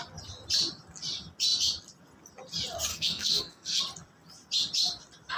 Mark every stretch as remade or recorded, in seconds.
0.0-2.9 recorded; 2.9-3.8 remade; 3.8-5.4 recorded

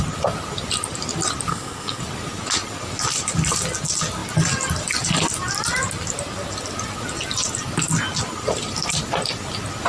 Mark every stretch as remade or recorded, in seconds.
0.0-1.5 recorded; 1.5-2.0 remade; 2.0-9.9 recorded

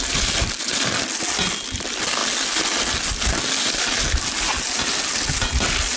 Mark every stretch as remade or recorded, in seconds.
0.0-6.0 recorded